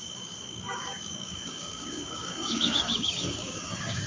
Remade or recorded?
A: remade